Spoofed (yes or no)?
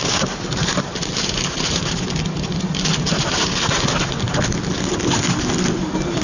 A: no